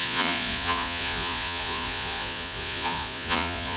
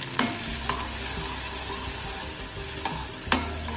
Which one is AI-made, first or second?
first